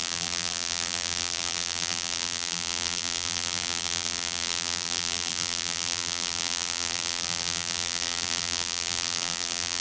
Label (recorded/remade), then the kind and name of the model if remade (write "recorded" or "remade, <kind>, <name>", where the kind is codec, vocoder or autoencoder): remade, vocoder, BigVGAN v2